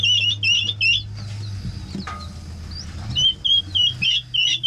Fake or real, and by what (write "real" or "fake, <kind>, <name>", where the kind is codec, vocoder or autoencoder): real